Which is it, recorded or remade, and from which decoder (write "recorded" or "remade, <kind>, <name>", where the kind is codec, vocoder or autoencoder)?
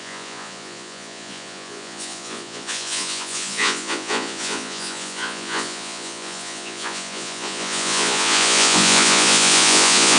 remade, vocoder, Vocos